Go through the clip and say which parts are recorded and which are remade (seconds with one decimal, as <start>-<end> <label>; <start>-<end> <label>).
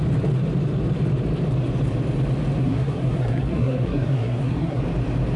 0.0-2.6 recorded; 2.6-4.8 remade; 4.8-5.4 recorded